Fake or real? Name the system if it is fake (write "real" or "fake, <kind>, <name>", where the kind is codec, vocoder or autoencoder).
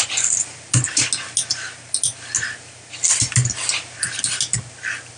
real